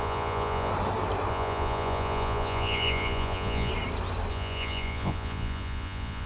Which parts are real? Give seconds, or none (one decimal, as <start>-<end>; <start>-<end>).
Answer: 0.7-1.3; 3.7-4.3